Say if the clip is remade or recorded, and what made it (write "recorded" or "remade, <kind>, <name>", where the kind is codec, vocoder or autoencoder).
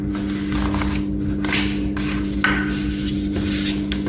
recorded